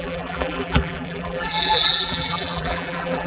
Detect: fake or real fake